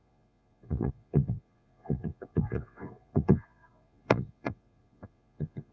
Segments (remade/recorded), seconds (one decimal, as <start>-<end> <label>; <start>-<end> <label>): 0.0-5.7 remade